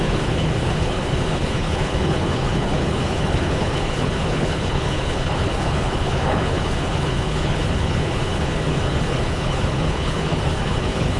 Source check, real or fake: fake